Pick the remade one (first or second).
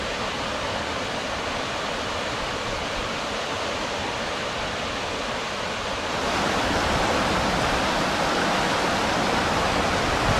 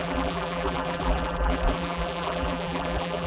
second